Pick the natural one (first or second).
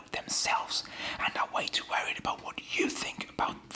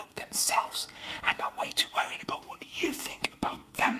first